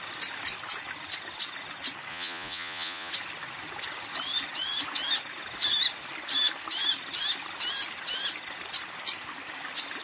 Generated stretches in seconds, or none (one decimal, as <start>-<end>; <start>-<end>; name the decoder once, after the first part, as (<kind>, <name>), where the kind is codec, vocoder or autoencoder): 2.1-3.1 (vocoder, Vocos)